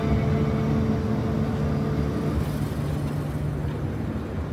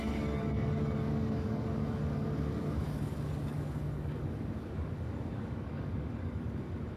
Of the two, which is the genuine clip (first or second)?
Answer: first